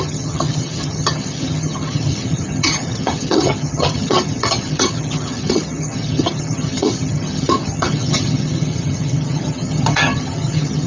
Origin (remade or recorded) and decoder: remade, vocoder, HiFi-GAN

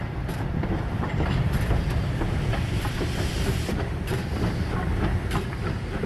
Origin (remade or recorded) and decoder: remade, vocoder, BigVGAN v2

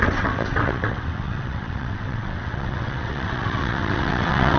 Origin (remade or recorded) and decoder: remade, vocoder, WaveNeXt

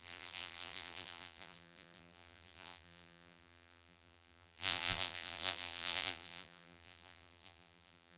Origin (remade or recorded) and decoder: remade, vocoder, BigVGAN v2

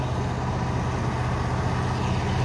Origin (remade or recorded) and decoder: recorded